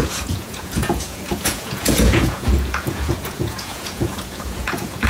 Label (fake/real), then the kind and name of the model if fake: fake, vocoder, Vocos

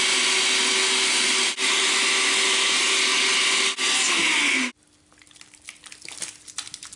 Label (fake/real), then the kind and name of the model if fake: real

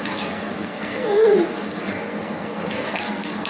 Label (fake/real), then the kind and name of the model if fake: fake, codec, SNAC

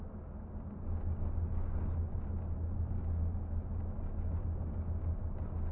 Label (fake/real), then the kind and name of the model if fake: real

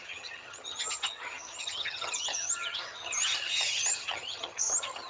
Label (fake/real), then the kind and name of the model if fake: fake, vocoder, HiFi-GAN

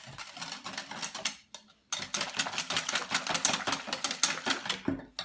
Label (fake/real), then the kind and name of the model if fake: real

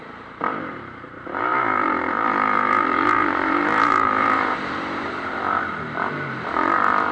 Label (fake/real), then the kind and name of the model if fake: fake, vocoder, BigVGAN v2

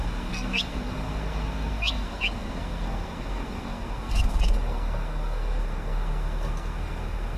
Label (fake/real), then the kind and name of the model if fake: fake, codec, SNAC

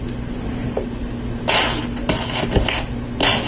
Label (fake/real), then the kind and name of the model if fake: real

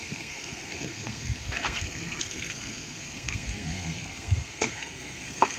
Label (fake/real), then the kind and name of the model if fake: fake, codec, SNAC